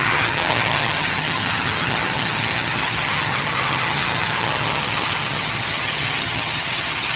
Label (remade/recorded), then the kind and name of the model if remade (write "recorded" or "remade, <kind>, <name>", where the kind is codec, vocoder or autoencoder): remade, vocoder, HiFi-GAN